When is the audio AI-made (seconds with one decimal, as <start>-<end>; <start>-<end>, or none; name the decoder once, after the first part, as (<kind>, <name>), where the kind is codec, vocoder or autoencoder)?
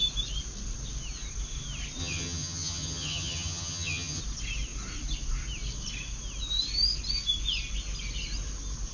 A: 2.0-4.2 (vocoder, HiFi-GAN)